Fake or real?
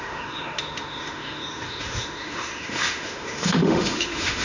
fake